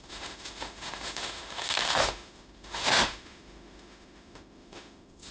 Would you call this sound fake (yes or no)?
yes